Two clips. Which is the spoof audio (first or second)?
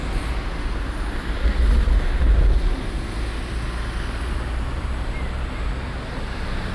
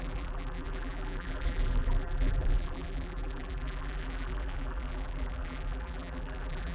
second